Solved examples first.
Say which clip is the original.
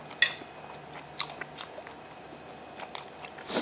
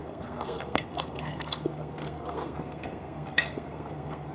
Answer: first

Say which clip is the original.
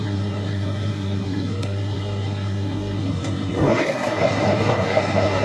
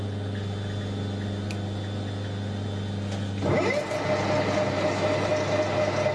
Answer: second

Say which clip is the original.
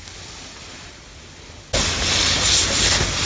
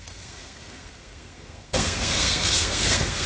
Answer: first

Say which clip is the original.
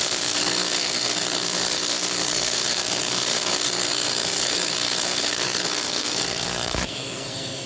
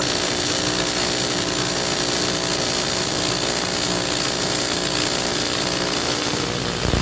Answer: second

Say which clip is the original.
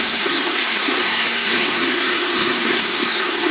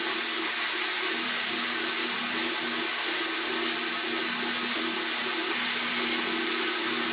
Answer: second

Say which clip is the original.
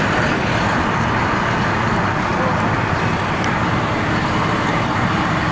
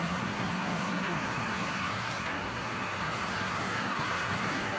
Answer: first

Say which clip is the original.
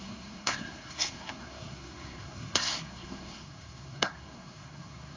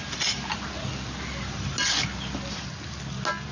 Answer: second